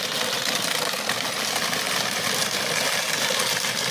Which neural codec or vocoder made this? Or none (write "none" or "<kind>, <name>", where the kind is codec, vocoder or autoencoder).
none